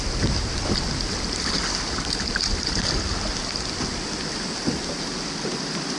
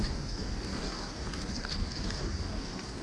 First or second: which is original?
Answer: first